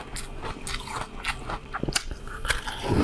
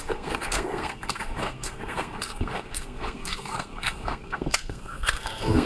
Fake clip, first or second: second